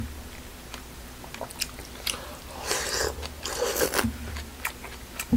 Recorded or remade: recorded